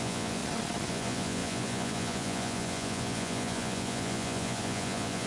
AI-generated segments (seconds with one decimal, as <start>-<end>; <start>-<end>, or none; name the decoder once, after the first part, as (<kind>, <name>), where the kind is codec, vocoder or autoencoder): 0.0-0.4 (vocoder, Vocos); 0.9-5.3